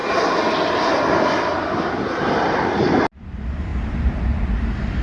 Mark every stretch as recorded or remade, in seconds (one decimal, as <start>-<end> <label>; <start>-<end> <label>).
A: 0.0-5.0 recorded